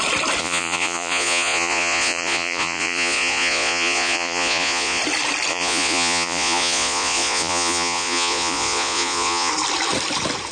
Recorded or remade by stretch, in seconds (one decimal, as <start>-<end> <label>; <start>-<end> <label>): 0.0-0.4 recorded; 0.4-5.0 remade; 5.0-5.5 recorded; 5.5-9.5 remade; 9.5-10.5 recorded